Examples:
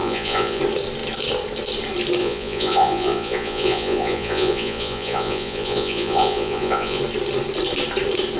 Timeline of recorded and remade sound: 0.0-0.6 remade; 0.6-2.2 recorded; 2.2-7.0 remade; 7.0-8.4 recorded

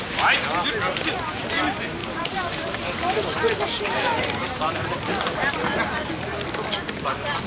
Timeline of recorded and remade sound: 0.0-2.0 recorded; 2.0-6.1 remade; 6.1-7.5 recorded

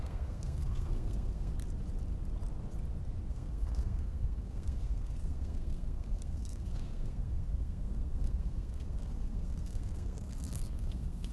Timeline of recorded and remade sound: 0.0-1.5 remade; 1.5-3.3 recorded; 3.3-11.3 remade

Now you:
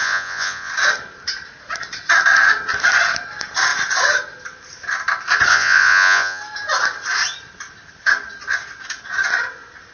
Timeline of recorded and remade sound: 0.0-0.7 remade; 0.7-5.5 recorded; 5.5-6.4 remade; 6.4-9.9 recorded

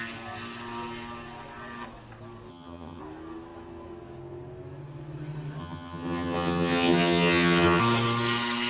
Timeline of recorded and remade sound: 0.0-2.5 recorded; 2.5-3.0 remade; 3.0-5.6 recorded; 5.6-7.8 remade; 7.8-8.7 recorded